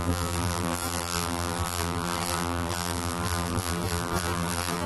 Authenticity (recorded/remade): remade